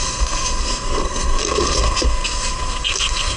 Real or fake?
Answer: fake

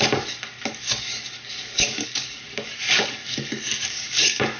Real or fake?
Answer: fake